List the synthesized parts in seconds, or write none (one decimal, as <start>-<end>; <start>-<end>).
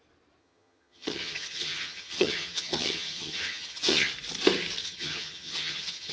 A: 0.4-4.1; 4.8-6.1